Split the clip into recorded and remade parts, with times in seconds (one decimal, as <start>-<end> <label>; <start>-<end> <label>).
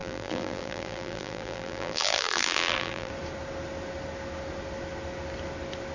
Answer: 0.0-3.1 remade; 3.1-5.9 recorded